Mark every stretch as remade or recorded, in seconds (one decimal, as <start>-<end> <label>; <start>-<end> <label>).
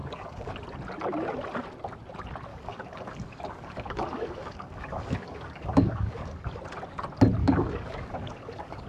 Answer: 0.0-0.5 remade; 0.5-2.5 recorded; 2.5-6.6 remade; 6.6-7.4 recorded; 7.4-8.9 remade